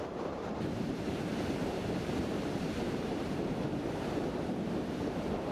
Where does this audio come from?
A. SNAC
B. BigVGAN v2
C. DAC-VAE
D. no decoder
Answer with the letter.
B